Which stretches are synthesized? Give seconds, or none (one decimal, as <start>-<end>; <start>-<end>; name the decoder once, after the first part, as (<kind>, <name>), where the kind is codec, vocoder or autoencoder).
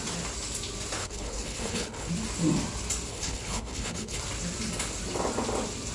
1.0-2.1 (codec, HILCodec); 3.1-4.2